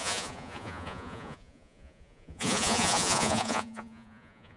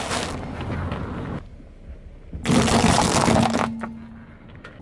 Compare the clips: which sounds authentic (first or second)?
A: second